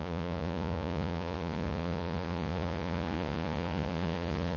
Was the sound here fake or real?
fake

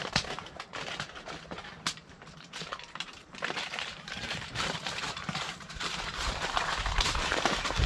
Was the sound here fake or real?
fake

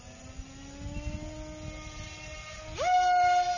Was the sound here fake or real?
real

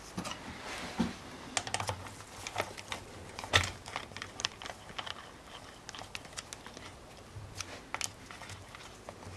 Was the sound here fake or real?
real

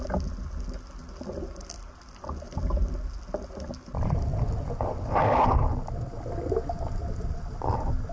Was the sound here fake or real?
real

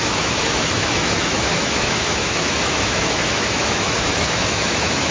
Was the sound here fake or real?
fake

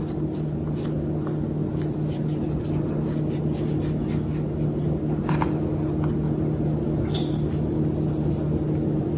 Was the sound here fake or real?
real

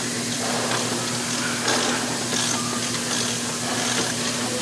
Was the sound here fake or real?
real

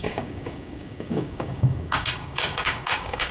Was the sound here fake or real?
fake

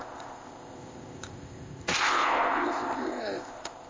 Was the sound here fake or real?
fake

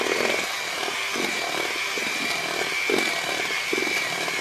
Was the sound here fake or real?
fake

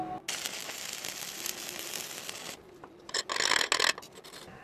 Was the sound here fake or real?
real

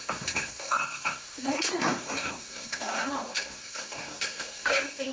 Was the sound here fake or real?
fake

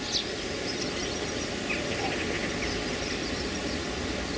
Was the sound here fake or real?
real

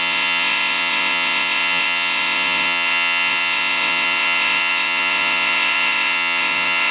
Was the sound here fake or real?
fake